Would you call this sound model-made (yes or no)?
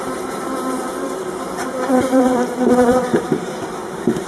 yes